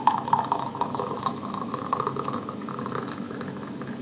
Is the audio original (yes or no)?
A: no